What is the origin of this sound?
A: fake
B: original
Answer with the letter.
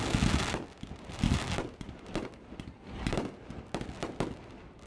B